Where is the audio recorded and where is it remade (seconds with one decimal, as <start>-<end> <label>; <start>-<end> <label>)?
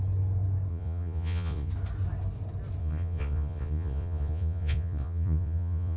0.0-0.7 recorded; 0.7-1.7 remade; 1.7-2.8 recorded; 2.8-6.0 remade